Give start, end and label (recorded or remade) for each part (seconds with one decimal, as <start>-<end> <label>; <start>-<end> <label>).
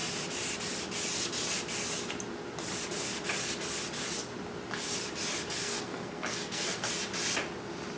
0.0-5.6 recorded; 5.6-6.9 remade; 6.9-8.0 recorded